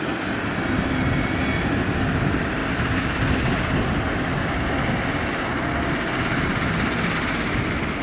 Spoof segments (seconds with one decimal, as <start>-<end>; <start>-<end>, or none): none